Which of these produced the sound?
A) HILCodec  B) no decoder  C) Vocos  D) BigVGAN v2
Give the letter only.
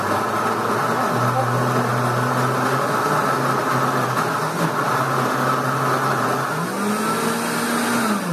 B